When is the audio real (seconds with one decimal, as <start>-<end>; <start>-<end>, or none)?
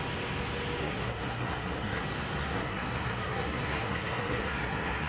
0.0-0.8; 2.0-2.4